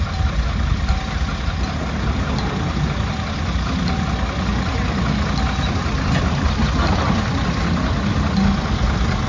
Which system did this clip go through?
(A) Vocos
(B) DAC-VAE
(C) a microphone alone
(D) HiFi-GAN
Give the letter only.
C